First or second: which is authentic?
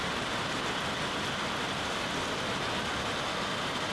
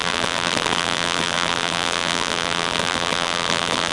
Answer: first